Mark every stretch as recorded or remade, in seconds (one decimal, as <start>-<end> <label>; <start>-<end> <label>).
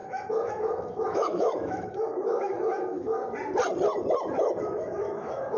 0.0-3.2 remade; 3.2-4.6 recorded; 4.6-5.6 remade